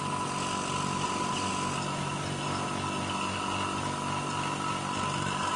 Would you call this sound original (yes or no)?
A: yes